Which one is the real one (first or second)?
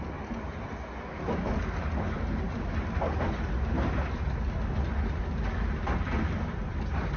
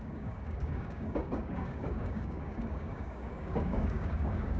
first